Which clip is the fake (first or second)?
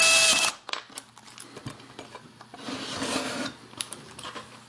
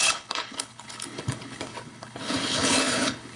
second